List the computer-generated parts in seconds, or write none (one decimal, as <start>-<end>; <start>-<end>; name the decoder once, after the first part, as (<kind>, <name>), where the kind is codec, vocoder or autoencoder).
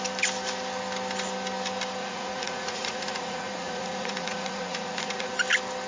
2.0-5.3 (vocoder, Vocos)